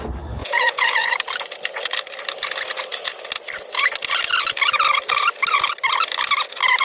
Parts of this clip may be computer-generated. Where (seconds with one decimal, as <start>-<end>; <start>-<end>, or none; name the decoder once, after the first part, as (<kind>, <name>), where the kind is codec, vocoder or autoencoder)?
0.4-1.1 (vocoder, Vocos)